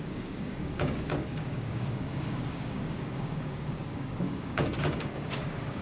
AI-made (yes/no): yes